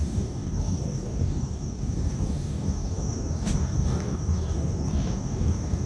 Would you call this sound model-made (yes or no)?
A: yes